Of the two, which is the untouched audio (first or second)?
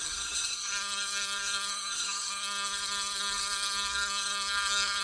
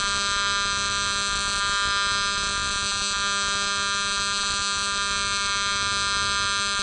second